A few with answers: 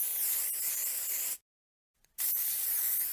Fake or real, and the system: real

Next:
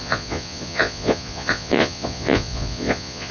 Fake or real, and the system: fake, vocoder, Vocos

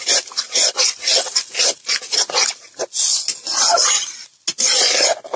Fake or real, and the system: real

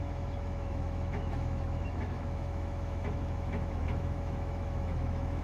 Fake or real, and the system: fake, autoencoder, DAC-VAE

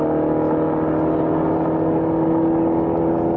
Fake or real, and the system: real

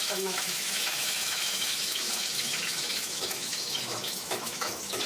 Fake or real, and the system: fake, autoencoder, DAC-VAE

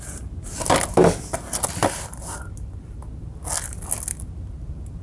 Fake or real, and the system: real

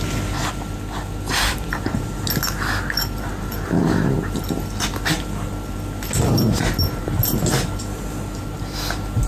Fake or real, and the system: real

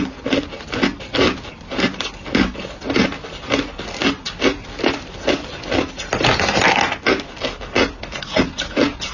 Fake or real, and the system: real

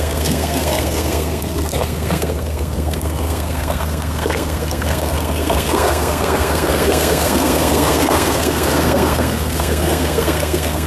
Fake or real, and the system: fake, codec, SNAC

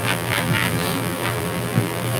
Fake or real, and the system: fake, vocoder, BigVGAN v2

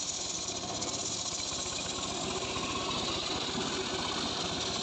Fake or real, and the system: real